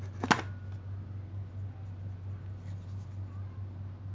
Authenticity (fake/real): real